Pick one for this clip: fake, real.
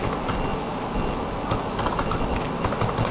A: real